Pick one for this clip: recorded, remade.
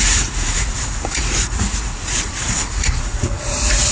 remade